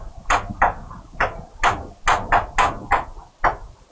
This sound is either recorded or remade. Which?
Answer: recorded